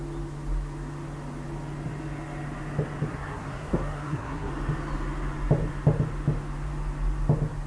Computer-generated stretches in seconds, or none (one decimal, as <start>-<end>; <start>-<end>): 3.1-4.5